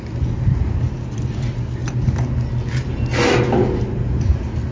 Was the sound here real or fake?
real